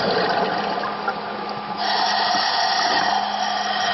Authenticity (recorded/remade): recorded